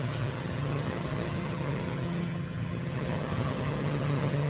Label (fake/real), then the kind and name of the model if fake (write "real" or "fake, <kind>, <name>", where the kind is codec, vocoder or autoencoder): fake, vocoder, HiFi-GAN